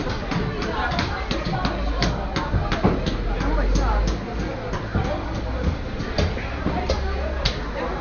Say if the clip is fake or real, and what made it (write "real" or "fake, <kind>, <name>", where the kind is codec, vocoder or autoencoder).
real